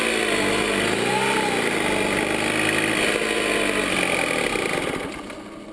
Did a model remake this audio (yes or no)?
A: no